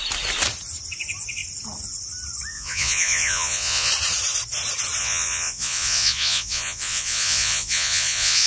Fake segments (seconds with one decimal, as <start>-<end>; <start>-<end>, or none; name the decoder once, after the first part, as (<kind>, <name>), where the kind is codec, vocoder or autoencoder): 2.5-3.9 (vocoder, Vocos); 5.0-8.5